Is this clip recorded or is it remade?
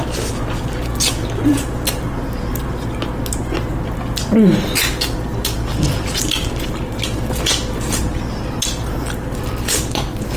recorded